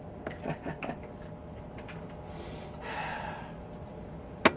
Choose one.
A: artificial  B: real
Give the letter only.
B